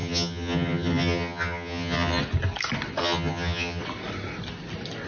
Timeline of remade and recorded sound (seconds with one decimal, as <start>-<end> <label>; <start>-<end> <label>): 0.0-2.2 remade; 2.2-3.0 recorded; 3.0-3.8 remade; 3.8-5.1 recorded